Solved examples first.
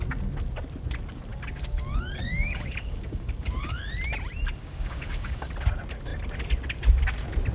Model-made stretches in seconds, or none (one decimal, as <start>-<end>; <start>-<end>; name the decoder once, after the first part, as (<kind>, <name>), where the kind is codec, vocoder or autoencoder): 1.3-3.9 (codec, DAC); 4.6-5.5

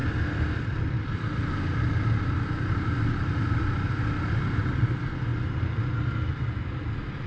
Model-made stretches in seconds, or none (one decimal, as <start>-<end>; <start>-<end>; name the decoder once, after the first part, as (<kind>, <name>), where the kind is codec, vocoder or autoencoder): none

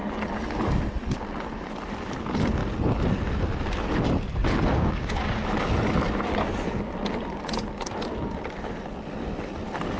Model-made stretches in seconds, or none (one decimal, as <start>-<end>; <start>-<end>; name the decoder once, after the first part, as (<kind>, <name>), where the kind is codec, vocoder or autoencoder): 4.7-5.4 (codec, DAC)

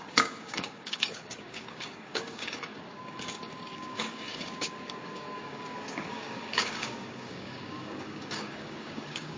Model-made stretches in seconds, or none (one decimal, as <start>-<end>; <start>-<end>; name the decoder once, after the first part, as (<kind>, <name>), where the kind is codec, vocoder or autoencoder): 0.0-9.4 (codec, DAC)